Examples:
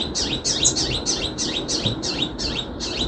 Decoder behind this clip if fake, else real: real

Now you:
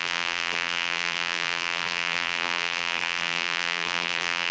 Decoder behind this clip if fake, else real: fake, vocoder, BigVGAN v2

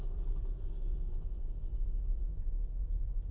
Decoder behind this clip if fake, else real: fake, vocoder, Vocos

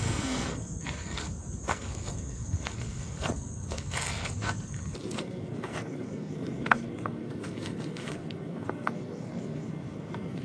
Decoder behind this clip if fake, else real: fake, codec, SNAC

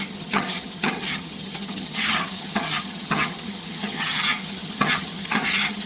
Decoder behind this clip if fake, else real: fake, vocoder, HiFi-GAN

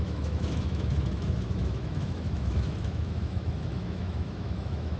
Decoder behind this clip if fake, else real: fake, autoencoder, DAC-VAE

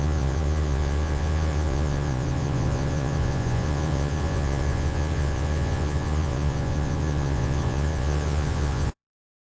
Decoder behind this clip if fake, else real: fake, vocoder, Vocos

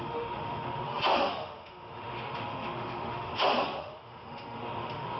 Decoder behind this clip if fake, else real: fake, autoencoder, DAC-VAE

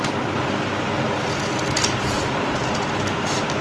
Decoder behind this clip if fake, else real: real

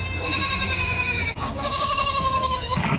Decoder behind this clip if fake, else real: fake, codec, DAC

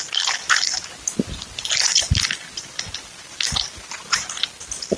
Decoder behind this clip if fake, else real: real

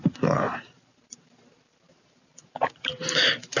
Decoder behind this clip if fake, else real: fake, vocoder, BigVGAN v2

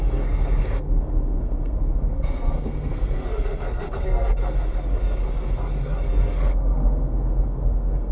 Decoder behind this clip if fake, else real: fake, codec, SNAC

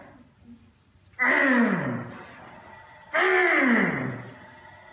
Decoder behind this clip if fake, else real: real